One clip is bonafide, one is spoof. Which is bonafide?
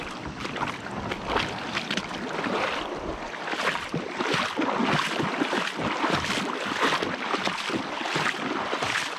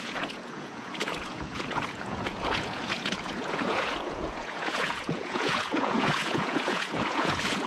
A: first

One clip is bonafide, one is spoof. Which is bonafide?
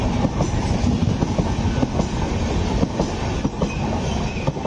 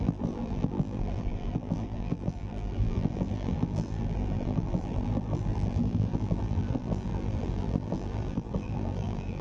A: first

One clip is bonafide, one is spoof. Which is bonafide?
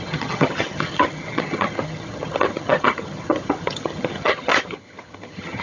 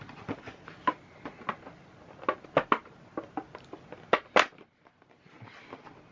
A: second